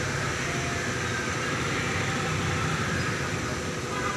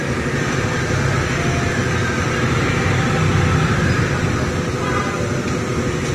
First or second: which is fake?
first